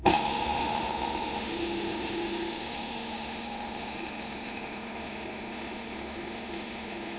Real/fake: fake